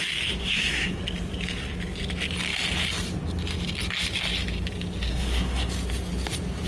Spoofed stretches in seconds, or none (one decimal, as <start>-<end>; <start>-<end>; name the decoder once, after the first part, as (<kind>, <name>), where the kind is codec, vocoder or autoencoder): 0.4-1.0 (codec, SNAC); 5.1-5.7